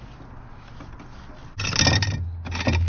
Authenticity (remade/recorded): recorded